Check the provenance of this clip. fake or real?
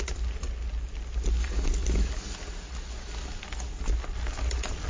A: real